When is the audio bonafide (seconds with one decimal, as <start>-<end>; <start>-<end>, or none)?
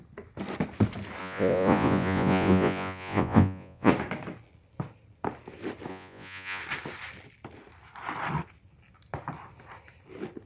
0.0-1.2; 3.9-5.9; 6.6-10.5